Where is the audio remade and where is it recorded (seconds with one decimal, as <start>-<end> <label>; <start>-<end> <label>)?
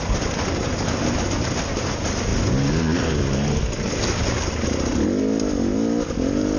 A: 0.0-6.6 recorded